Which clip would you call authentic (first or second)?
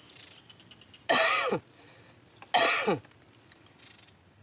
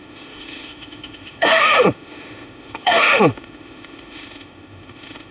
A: first